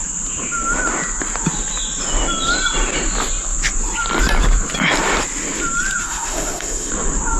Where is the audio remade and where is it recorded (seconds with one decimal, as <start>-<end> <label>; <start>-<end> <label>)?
0.0-6.0 recorded; 6.0-6.9 remade; 6.9-7.4 recorded